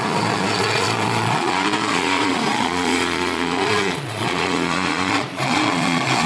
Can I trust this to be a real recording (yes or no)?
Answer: no